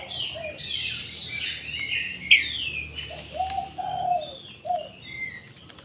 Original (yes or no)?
yes